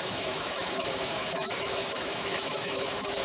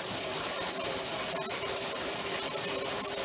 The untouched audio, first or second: second